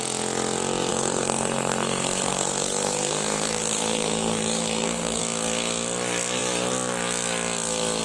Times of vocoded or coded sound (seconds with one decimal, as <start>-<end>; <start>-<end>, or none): 0.9-5.2